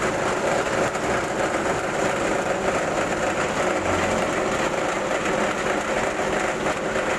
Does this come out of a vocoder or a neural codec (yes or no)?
no